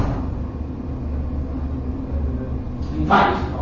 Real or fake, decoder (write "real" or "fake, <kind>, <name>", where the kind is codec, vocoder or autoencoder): real